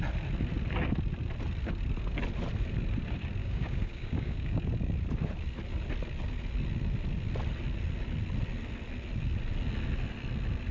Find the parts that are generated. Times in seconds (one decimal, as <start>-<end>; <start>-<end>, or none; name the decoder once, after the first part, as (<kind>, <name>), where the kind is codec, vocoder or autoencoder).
3.4-4.7 (codec, DAC)